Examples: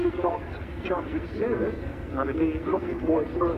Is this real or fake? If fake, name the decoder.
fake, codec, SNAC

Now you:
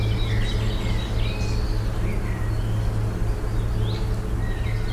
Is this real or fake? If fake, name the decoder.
real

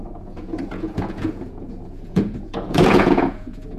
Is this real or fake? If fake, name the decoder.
fake, vocoder, Vocos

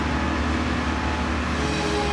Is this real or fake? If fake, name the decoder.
real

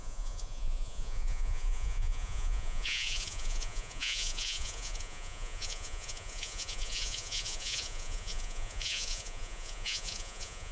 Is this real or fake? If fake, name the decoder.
fake, vocoder, Vocos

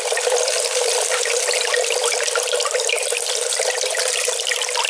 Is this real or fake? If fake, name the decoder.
real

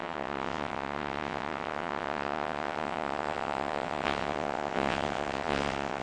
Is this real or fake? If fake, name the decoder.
fake, vocoder, WaveNeXt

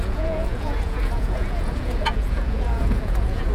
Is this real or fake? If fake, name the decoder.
fake, vocoder, Vocos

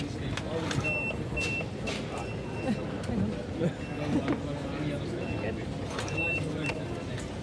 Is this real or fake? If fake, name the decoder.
real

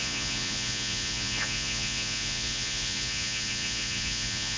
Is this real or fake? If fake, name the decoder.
fake, vocoder, Vocos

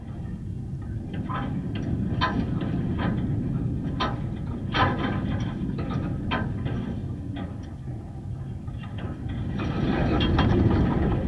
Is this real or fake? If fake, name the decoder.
real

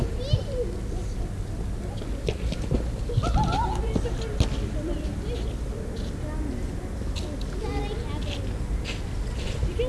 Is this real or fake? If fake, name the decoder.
real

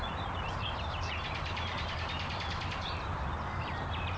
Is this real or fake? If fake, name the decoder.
fake, vocoder, BigVGAN v2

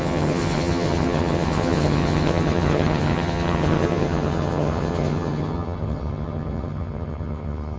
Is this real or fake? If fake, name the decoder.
fake, vocoder, HiFi-GAN